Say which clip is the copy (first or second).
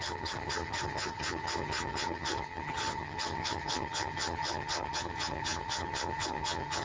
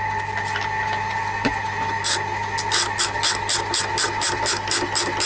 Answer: first